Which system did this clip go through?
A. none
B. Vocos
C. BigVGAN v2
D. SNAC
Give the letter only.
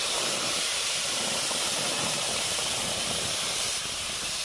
C